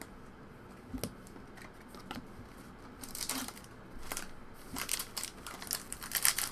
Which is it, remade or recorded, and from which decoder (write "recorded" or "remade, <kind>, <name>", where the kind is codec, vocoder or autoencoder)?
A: recorded